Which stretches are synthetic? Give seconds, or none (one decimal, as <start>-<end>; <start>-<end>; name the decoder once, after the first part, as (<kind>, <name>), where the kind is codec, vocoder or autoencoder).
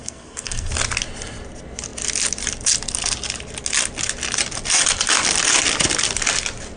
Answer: 0.0-0.7 (codec, SNAC)